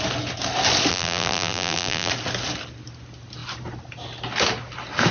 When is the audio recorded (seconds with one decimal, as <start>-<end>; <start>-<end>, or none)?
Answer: 0.0-0.9; 2.1-5.1